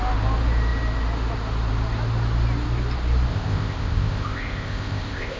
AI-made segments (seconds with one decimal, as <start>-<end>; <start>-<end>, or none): 3.3-5.4